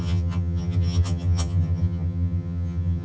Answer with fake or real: fake